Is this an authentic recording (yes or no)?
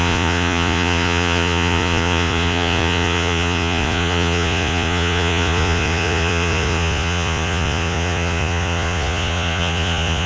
no